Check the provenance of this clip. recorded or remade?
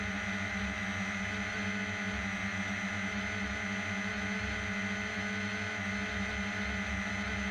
recorded